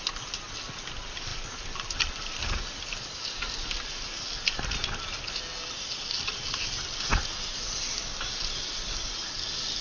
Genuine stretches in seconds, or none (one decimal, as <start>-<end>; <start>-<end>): 0.0-9.8